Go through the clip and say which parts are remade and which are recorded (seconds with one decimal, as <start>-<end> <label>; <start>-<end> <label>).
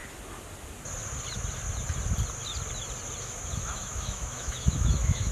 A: 0.0-3.2 recorded; 3.2-5.3 remade